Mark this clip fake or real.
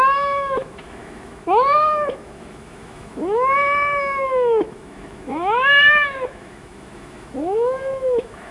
fake